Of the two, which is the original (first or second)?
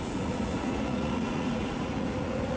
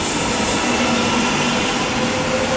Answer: second